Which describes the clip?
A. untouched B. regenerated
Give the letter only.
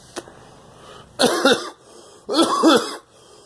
A